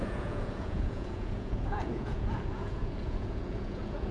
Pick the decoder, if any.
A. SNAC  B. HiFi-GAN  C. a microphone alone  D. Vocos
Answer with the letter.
D